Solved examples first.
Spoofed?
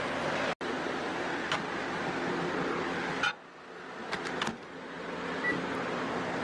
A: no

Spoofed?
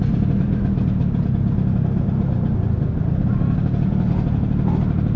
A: no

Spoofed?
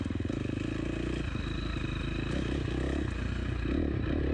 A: no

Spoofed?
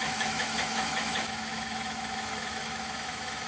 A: yes